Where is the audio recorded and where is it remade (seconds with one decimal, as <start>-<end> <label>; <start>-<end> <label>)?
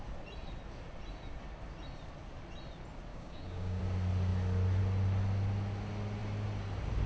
0.0-3.1 recorded; 3.1-3.8 remade; 3.8-7.1 recorded